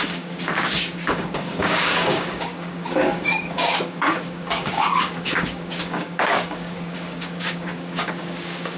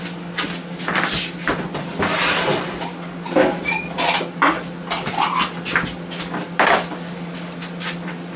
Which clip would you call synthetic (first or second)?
first